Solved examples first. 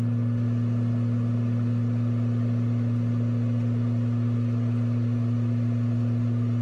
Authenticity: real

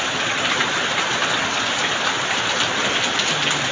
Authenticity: real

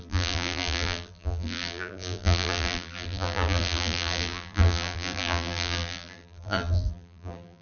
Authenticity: fake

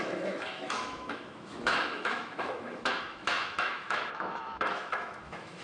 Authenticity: fake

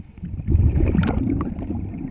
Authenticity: real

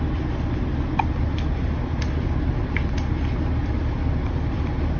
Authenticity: real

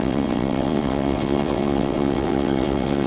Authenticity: fake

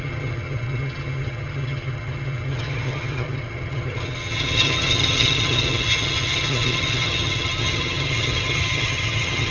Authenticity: fake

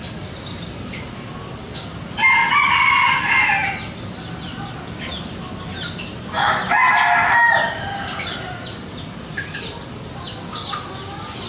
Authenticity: real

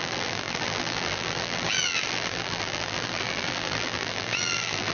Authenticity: fake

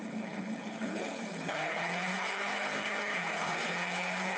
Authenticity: fake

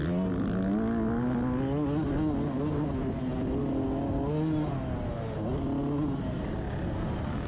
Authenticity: real